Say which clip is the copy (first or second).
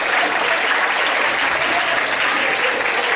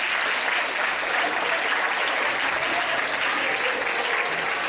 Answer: first